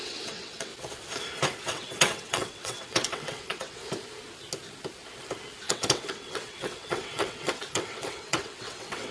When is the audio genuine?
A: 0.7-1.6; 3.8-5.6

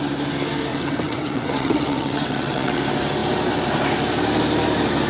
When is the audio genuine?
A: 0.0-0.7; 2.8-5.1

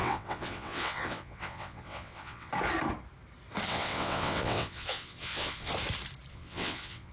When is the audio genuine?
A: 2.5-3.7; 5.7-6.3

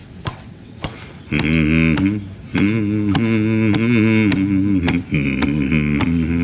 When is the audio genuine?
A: 1.0-6.4

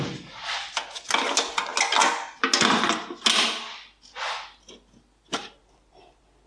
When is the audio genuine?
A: 0.0-6.5

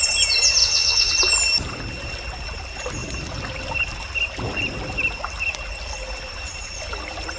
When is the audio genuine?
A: 0.0-0.6; 1.1-7.4

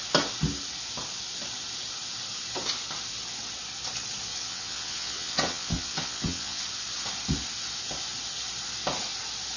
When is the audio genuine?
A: 0.0-4.3; 6.6-9.6